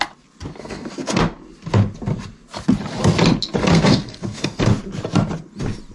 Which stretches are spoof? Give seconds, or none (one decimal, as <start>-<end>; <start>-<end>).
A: 0.6-1.2; 3.6-4.6